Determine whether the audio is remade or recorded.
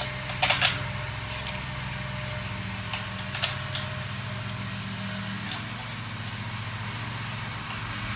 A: recorded